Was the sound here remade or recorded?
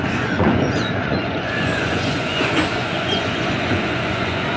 remade